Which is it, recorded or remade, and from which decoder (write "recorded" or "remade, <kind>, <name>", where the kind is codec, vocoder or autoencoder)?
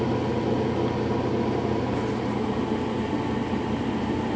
recorded